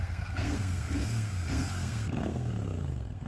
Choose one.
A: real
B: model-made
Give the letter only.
B